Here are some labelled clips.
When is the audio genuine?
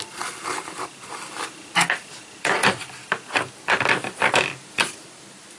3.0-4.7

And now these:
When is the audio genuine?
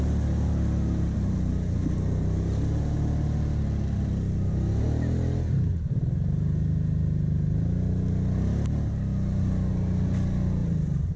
0.0-10.6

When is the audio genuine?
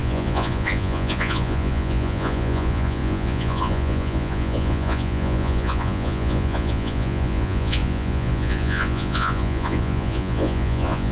none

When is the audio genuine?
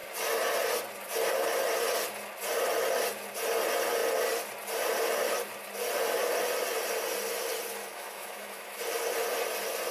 0.0-7.8; 8.8-9.9